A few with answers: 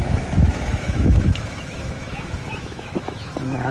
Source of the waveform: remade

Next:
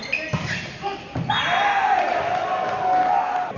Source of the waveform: recorded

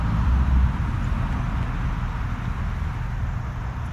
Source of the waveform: recorded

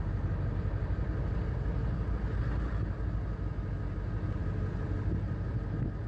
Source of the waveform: recorded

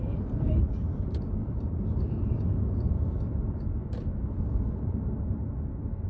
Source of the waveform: recorded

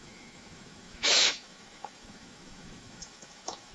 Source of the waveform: remade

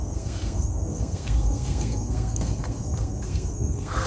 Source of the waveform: remade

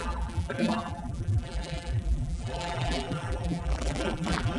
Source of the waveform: remade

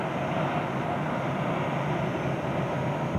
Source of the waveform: recorded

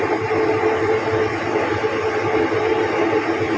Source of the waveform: recorded